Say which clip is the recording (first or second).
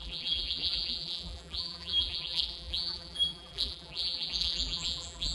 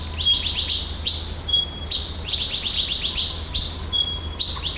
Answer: second